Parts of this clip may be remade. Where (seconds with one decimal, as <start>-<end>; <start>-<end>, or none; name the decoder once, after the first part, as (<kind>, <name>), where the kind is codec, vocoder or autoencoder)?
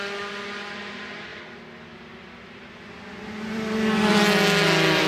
1.3-4.2 (vocoder, BigVGAN v2)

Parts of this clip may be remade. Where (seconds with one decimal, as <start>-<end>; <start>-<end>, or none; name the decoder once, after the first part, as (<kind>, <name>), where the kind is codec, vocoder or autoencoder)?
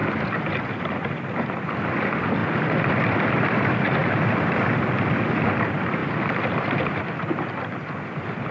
0.6-8.5 (vocoder, BigVGAN v2)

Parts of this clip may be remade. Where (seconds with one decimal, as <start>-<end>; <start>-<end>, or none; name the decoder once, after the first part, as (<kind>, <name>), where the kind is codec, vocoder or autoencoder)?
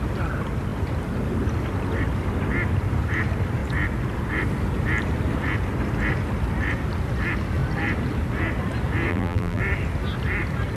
9.1-9.6 (vocoder, BigVGAN v2)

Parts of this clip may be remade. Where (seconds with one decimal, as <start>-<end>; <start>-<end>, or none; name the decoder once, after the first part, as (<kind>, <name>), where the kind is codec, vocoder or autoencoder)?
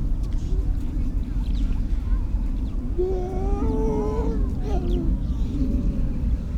none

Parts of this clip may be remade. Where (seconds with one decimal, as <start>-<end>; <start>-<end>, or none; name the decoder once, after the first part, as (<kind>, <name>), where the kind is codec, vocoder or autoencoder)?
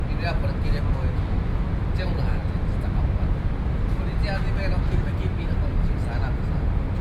5.3-5.9 (vocoder, BigVGAN v2)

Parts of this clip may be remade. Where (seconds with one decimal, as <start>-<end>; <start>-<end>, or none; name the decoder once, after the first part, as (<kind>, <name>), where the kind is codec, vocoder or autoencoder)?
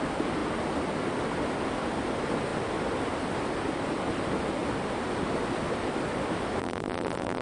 6.6-7.4 (vocoder, BigVGAN v2)